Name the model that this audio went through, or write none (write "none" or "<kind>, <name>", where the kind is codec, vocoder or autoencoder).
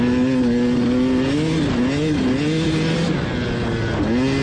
none